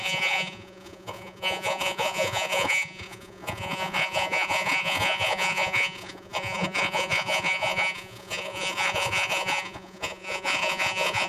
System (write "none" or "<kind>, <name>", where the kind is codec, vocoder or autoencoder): vocoder, Vocos